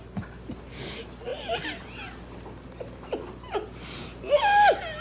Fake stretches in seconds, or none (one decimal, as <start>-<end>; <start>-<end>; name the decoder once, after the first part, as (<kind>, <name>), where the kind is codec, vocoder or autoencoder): none